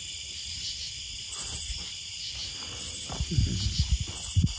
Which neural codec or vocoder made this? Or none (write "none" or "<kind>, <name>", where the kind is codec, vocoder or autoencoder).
none